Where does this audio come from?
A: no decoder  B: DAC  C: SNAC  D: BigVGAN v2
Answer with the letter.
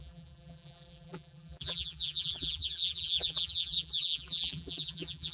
D